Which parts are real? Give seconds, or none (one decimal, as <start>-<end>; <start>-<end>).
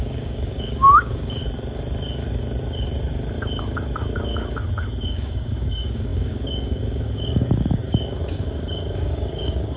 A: 1.4-5.1; 7.8-8.3